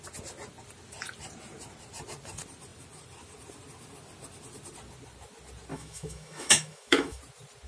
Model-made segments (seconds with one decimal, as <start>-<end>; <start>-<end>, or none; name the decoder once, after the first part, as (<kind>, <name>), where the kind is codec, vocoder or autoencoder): 5.7-7.2 (autoencoder, DAC-VAE)